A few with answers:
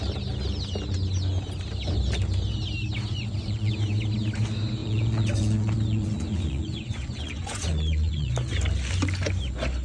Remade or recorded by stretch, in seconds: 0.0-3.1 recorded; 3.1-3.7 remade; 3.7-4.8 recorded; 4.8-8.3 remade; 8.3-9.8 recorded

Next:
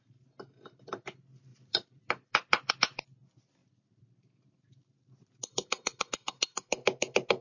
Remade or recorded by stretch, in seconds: 0.0-1.5 recorded; 1.5-2.7 remade; 2.7-3.6 recorded; 3.6-6.1 remade; 6.1-7.4 recorded

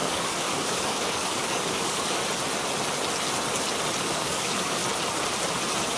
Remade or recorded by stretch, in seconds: 0.0-2.2 remade; 2.2-4.0 recorded; 4.0-4.8 remade; 4.8-6.0 recorded

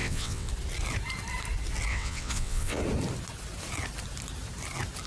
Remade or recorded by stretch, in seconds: 0.0-0.5 remade; 0.5-1.9 recorded; 1.9-2.8 remade; 2.8-5.1 recorded